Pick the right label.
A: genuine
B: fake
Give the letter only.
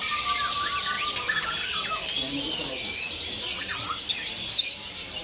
A